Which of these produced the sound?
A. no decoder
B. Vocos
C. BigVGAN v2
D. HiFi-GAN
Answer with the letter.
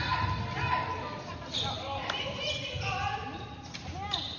A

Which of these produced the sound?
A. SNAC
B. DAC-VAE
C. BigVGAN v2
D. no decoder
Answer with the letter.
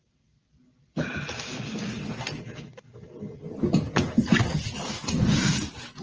D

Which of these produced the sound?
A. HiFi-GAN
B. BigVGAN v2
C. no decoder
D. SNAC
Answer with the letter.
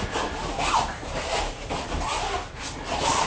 C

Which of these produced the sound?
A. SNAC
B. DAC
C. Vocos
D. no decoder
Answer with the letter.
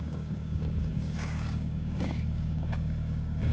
B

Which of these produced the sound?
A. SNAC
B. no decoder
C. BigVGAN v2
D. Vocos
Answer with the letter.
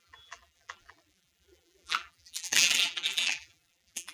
C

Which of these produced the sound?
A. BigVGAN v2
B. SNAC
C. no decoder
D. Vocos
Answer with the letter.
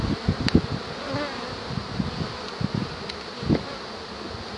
C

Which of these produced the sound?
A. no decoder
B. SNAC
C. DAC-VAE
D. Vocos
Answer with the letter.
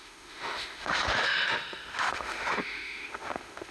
C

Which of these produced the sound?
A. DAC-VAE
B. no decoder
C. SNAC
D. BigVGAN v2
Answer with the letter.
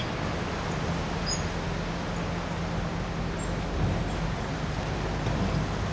B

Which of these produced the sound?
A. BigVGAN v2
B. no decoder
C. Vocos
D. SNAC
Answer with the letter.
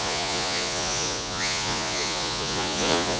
C